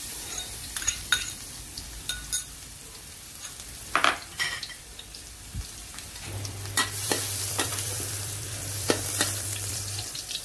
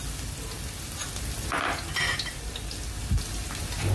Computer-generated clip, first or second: first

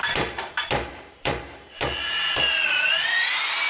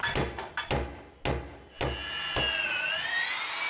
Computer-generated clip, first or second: first